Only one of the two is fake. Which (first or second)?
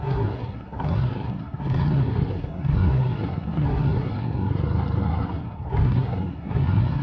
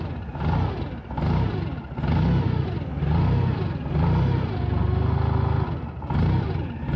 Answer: first